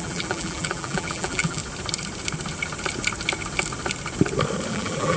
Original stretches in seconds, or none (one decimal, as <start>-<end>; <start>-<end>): 1.6-4.7